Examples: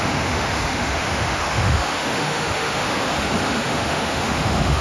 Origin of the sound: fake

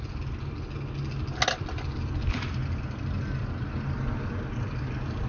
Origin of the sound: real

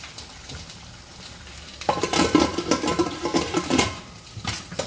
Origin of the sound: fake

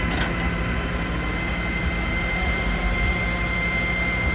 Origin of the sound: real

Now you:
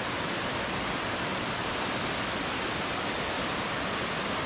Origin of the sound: real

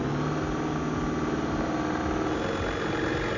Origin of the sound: real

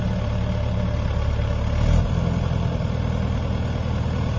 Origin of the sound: real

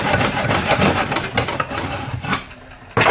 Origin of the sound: fake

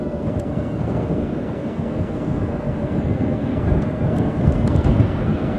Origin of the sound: fake